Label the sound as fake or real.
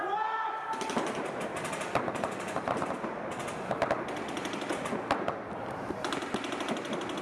real